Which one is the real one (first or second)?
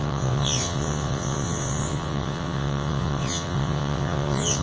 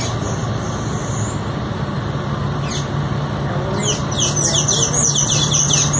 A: second